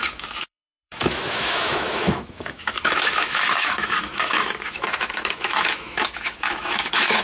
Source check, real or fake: fake